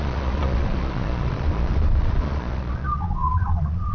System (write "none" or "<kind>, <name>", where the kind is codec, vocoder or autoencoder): vocoder, Vocos